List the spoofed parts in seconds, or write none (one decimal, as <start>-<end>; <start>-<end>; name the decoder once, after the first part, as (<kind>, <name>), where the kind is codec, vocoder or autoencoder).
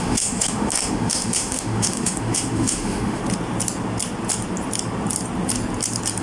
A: 0.0-3.2 (autoencoder, DAC-VAE)